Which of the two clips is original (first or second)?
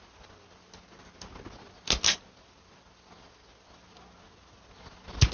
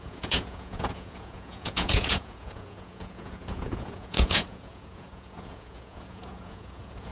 first